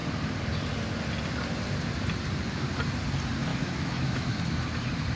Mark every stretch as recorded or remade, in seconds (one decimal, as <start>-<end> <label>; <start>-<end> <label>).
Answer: 0.0-3.5 recorded; 3.5-4.4 remade; 4.4-5.2 recorded